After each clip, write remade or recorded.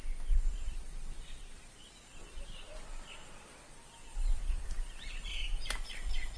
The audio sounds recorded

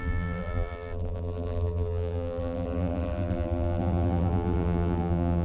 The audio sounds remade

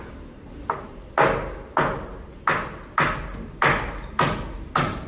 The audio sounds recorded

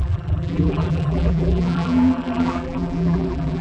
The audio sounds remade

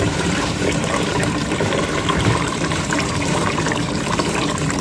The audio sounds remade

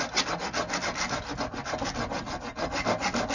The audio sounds recorded